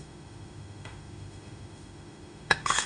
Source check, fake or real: fake